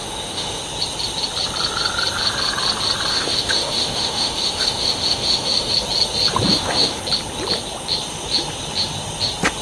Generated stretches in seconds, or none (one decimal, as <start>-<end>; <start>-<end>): 0.0-0.6; 3.1-5.7; 6.5-7.0